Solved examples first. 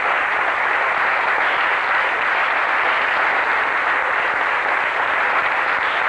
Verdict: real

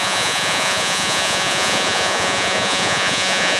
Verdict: fake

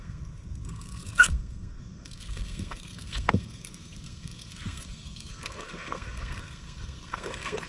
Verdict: fake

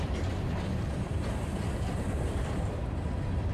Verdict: fake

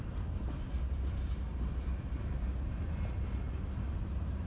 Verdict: real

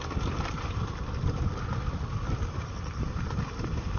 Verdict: fake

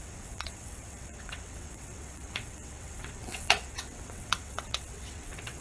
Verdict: fake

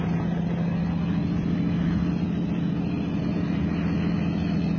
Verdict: real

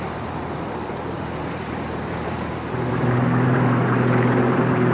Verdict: fake